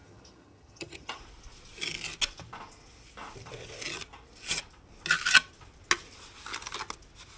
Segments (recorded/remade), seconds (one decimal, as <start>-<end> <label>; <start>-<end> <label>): 0.0-1.2 remade; 1.2-7.4 recorded